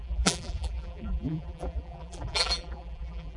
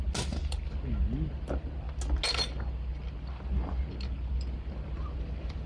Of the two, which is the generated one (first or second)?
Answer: first